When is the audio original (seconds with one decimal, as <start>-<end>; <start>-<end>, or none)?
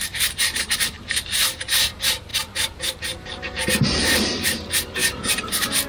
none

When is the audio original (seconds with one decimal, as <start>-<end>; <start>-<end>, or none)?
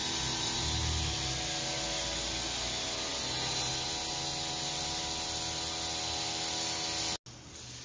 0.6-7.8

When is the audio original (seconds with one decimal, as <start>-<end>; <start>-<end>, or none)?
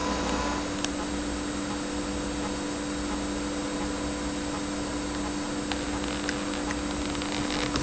0.0-7.8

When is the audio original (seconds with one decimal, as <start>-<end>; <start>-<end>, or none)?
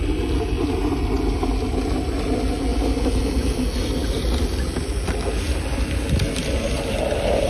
0.0-7.5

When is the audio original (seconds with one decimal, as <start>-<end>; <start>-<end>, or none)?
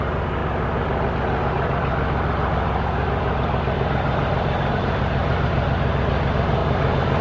0.4-4.7; 5.2-6.1; 6.6-7.2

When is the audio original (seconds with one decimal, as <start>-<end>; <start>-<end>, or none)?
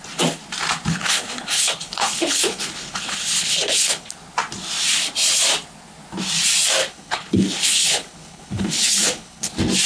0.0-0.9; 4.1-6.8; 9.5-9.9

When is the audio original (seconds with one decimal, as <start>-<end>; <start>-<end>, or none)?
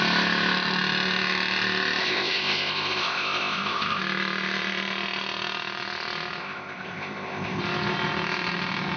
0.0-2.0; 4.0-6.4; 7.6-9.0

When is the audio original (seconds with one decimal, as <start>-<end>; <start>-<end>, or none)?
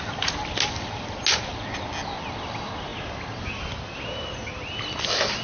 0.0-5.4